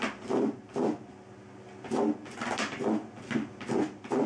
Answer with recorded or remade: recorded